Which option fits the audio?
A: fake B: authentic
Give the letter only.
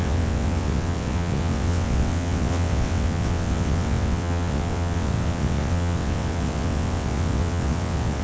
A